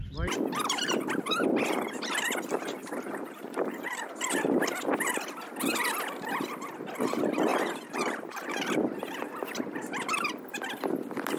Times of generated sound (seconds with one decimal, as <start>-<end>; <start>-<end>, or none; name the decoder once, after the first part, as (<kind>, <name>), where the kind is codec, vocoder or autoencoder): 2.8-4.2 (vocoder, BigVGAN v2); 7.5-8.7